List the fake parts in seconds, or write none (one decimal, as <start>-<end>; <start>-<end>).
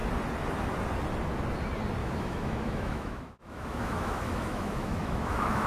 2.0-5.7